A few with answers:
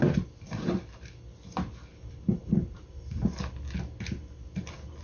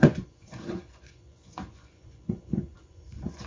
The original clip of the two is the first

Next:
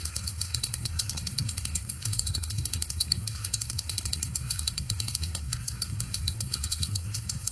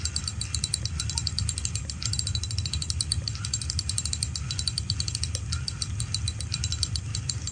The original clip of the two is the second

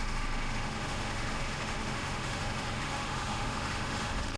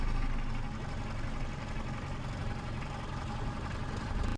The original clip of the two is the second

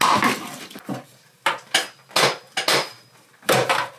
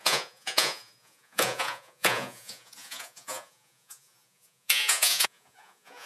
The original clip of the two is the first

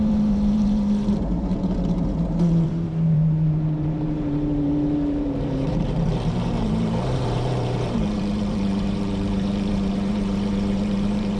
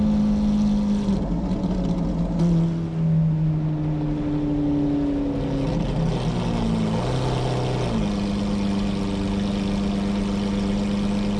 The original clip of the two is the second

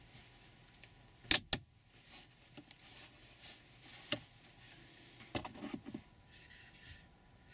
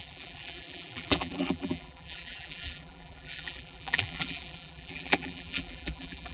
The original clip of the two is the first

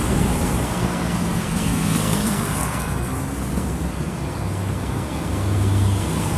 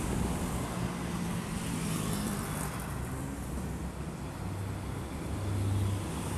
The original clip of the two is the second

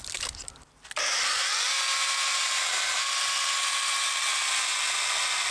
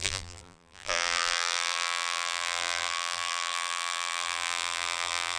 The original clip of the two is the first